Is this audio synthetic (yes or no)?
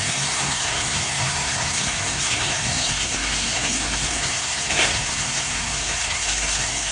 yes